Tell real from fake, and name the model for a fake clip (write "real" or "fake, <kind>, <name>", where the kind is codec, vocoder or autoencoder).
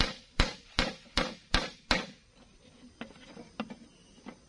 real